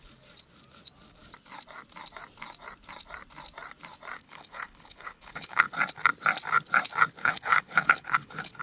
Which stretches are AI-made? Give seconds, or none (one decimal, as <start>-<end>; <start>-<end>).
4.2-5.7; 7.2-8.6

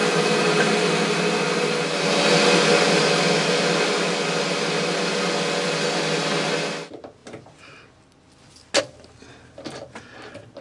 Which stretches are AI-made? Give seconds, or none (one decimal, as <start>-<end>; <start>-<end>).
none

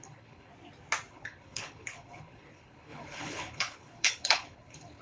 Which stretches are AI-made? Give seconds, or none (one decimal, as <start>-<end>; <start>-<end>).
0.0-0.5; 1.1-5.0

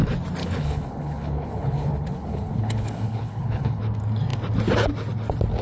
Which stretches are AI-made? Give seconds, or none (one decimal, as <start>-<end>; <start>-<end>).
0.4-3.8

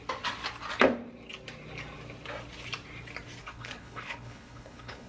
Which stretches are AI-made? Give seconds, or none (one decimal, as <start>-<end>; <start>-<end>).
3.4-5.1

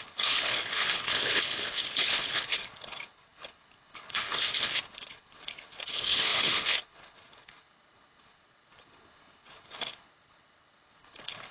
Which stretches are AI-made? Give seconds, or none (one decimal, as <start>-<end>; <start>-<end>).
0.0-11.5

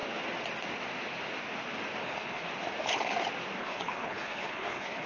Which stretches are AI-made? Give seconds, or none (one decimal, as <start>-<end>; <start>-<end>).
2.0-2.5; 3.6-5.1